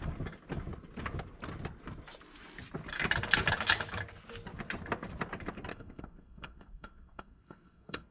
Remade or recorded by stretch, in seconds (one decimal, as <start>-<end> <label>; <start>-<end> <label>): 0.0-5.7 recorded; 5.7-8.1 remade